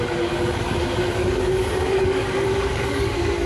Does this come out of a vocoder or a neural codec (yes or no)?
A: yes